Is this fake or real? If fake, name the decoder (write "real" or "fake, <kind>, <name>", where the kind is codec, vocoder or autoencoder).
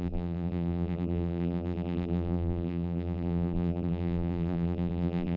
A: fake, vocoder, BigVGAN v2